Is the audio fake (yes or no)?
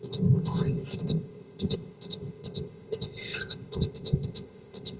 yes